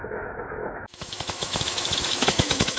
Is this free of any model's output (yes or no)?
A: no